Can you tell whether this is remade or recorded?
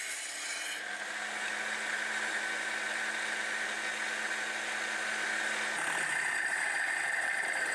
recorded